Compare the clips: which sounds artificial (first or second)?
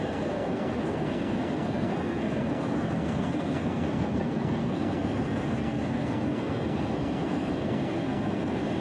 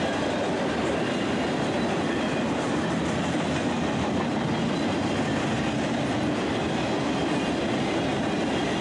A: first